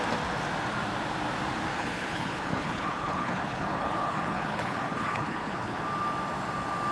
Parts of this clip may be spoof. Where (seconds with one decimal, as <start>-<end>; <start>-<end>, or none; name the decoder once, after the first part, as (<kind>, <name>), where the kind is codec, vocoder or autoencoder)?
1.7-5.8 (codec, HILCodec)